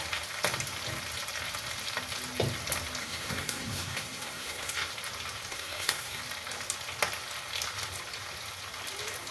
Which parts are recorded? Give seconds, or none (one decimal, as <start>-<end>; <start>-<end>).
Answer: 0.0-3.0; 4.9-5.5; 6.2-9.3